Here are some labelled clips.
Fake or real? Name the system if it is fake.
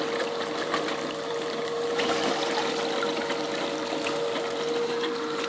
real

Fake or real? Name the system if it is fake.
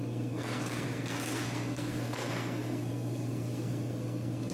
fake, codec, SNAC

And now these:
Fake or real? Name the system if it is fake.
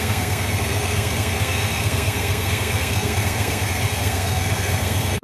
fake, codec, SNAC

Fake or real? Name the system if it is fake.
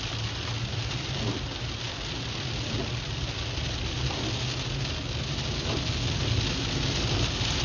real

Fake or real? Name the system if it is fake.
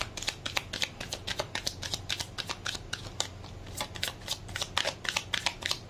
real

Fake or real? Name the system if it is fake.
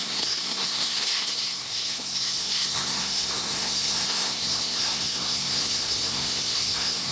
fake, codec, SNAC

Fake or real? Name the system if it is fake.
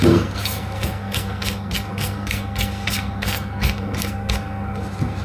fake, codec, SNAC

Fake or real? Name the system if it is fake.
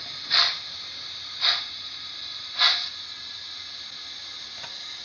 real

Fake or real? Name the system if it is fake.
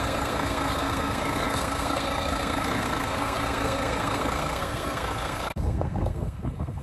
fake, codec, SNAC